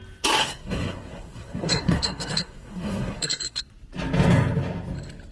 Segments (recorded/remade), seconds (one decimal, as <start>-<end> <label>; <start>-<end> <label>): 0.0-0.4 recorded; 0.4-3.6 remade; 3.6-5.3 recorded